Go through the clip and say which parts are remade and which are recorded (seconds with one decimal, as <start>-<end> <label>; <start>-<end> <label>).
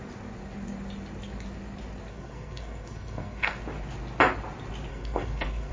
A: 0.0-2.1 recorded; 2.1-3.6 remade; 3.6-4.9 recorded; 4.9-5.7 remade